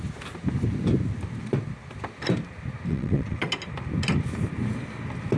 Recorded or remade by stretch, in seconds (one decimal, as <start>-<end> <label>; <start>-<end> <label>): 0.0-2.9 recorded; 2.9-3.5 remade; 3.5-5.4 recorded